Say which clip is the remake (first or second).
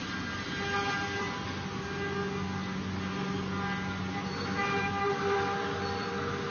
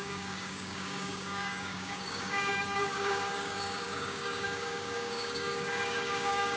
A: second